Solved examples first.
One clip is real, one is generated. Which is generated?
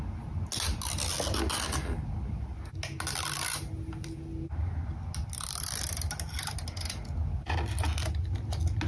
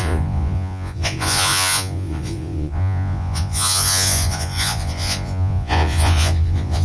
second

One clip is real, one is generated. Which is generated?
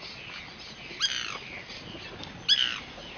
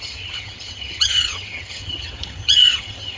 second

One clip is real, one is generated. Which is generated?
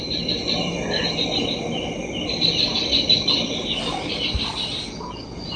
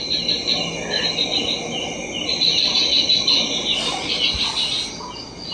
first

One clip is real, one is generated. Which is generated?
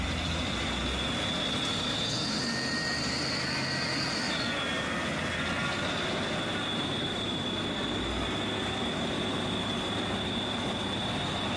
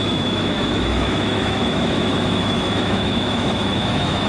second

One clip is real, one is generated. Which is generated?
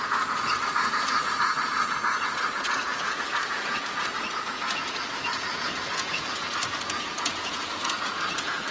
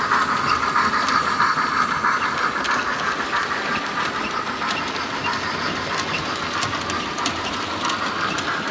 first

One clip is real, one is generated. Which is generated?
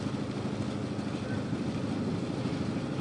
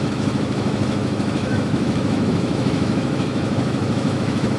second